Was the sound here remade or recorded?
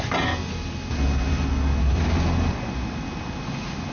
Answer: recorded